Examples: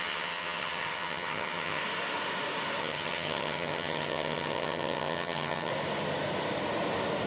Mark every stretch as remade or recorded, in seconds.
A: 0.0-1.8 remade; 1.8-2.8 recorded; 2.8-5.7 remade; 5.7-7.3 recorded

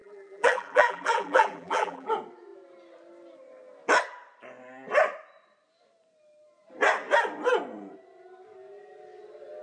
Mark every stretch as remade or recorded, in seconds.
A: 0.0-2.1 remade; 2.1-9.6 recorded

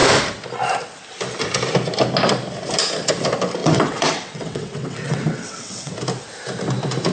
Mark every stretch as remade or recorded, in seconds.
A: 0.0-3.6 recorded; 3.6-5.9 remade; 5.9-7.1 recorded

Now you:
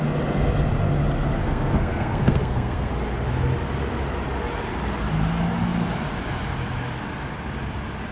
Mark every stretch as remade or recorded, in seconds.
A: 0.0-1.4 recorded; 1.4-2.9 remade; 2.9-8.1 recorded

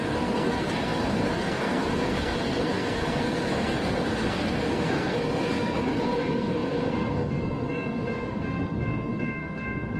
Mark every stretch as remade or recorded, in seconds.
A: 0.0-10.0 remade

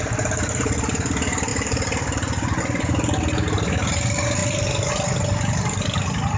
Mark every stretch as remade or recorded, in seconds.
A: 0.0-6.4 recorded